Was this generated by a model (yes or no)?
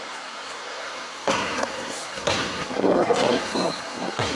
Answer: yes